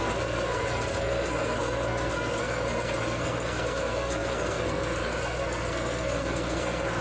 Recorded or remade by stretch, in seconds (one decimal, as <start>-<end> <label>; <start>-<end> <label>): 0.0-7.0 remade

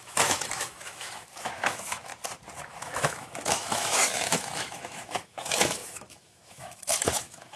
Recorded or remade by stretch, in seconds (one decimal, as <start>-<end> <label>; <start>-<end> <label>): 0.0-2.1 remade; 2.1-2.6 recorded; 2.6-7.6 remade